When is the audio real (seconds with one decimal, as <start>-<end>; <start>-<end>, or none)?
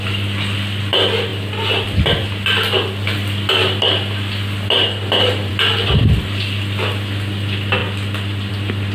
0.0-8.9